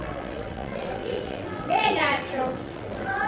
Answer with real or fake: fake